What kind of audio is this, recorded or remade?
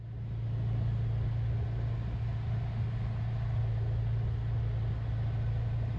recorded